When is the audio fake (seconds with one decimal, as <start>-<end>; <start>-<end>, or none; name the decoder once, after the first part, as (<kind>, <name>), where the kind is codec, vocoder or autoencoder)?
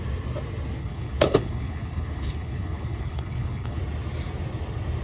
0.8-3.8 (codec, HILCodec)